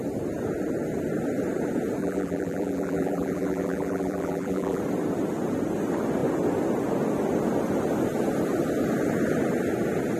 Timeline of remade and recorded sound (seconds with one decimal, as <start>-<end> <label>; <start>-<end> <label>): 0.0-2.0 recorded; 2.0-4.8 remade; 4.8-10.2 recorded